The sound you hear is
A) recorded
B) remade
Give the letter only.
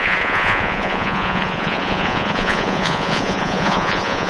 B